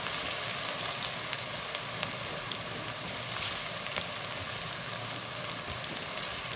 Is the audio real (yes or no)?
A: no